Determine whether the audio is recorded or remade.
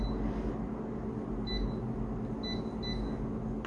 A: recorded